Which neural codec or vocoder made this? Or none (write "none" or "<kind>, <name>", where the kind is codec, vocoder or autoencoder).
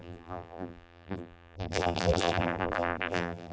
vocoder, BigVGAN v2